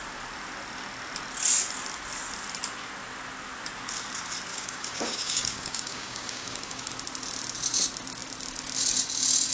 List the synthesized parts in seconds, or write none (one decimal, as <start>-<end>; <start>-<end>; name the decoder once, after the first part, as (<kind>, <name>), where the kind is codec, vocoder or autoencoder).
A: 4.5-6.9 (codec, DAC)